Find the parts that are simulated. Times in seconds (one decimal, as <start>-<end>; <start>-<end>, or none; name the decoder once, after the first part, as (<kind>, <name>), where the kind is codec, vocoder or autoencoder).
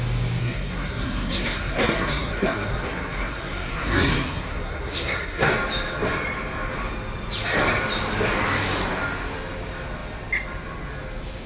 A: 0.4-5.5 (codec, SNAC)